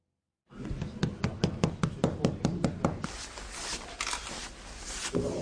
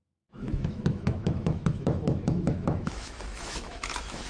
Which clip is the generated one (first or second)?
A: second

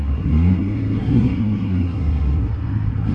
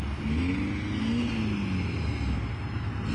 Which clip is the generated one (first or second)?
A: first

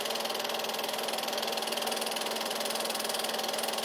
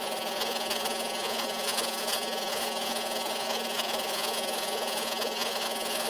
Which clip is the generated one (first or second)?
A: second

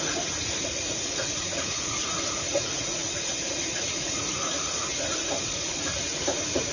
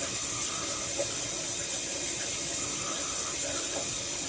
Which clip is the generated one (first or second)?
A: first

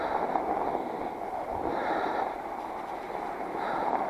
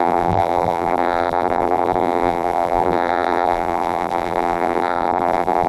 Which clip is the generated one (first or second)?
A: second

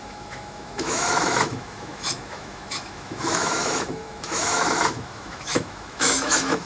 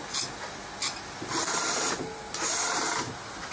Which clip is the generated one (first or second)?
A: first